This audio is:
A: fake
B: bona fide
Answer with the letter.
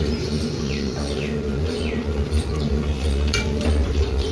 A